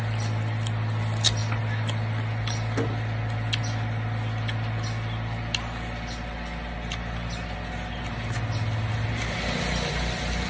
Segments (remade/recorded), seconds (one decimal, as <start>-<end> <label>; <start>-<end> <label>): 0.0-10.5 recorded

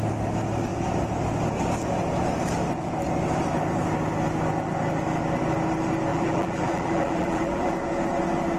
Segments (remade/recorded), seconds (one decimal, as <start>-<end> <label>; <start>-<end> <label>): 0.0-6.1 recorded; 6.1-7.7 remade; 7.7-8.6 recorded

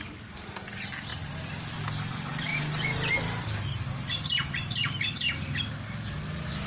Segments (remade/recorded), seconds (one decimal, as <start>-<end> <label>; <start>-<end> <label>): 0.0-2.5 remade; 2.5-6.7 recorded